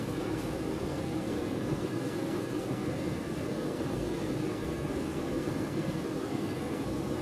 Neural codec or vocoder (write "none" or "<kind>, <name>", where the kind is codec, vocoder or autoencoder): codec, SNAC